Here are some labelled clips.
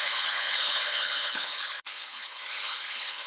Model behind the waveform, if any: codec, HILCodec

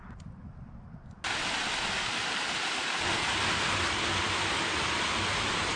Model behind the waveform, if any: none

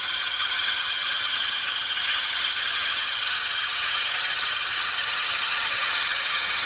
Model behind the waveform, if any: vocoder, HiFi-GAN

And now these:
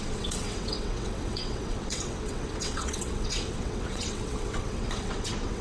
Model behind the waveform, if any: vocoder, WaveNeXt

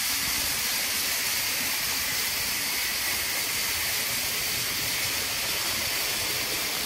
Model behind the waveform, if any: none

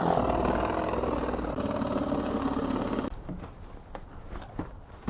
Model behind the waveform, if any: none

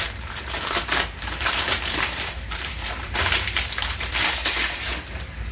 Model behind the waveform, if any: vocoder, BigVGAN v2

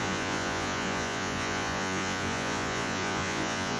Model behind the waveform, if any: vocoder, Vocos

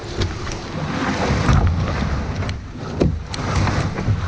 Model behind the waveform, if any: none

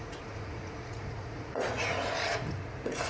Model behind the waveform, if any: vocoder, Vocos